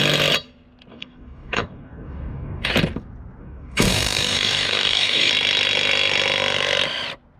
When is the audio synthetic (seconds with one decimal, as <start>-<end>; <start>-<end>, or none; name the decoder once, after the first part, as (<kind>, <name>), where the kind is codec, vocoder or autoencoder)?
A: 0.9-2.7 (codec, DAC); 3.4-5.3